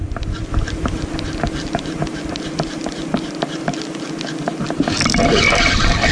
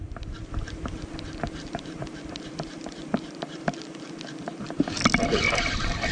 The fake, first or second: second